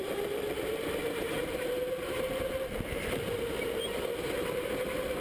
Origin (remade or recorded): remade